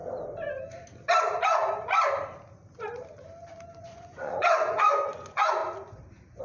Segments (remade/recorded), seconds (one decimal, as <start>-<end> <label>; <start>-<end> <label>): 0.0-3.8 recorded; 3.8-5.6 remade; 5.6-6.4 recorded